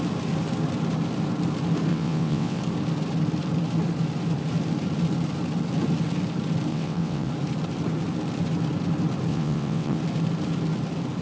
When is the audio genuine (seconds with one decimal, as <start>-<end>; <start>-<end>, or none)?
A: 0.0-1.9; 2.6-6.7; 7.3-9.3; 10.0-11.2